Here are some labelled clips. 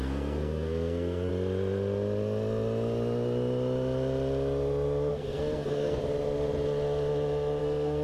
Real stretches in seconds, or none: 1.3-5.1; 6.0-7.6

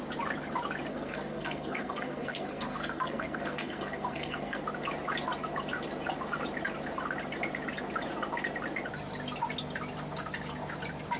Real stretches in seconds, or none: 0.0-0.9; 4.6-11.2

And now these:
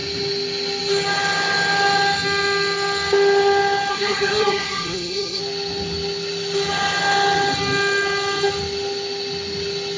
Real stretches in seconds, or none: 0.0-3.9; 5.4-10.0